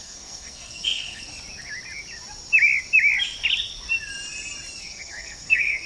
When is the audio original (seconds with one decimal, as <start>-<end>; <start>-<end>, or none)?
1.3-4.8